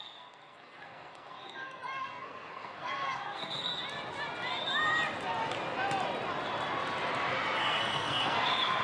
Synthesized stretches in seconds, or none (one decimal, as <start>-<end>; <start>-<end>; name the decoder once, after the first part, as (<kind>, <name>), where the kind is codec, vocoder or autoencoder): 0.0-3.7 (codec, SNAC); 7.6-8.8